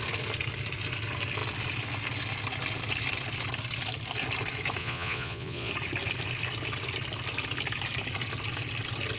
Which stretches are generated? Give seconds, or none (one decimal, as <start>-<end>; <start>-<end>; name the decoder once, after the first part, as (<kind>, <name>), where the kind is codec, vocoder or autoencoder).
4.8-5.7 (vocoder, Vocos)